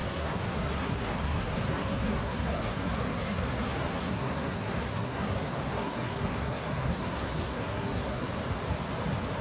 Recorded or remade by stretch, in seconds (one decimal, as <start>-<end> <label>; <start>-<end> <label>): 0.0-8.3 remade; 8.3-9.4 recorded